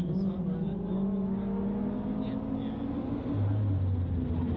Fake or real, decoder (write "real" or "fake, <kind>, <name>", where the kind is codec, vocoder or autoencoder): real